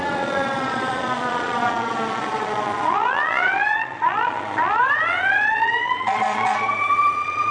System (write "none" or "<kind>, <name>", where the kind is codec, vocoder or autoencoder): vocoder, Vocos